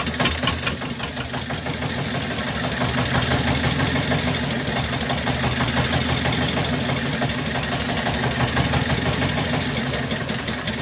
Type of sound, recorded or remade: recorded